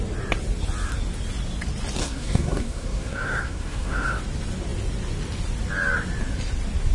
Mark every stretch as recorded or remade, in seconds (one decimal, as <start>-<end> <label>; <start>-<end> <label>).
0.0-2.0 recorded; 2.0-4.2 remade; 4.2-6.9 recorded